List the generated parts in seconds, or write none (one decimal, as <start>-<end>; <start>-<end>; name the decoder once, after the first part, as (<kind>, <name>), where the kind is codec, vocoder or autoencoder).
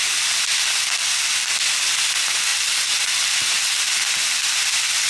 none